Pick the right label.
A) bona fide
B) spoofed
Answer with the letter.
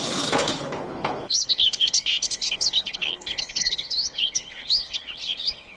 B